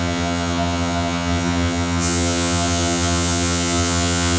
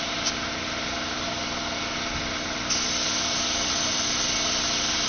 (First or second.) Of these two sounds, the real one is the second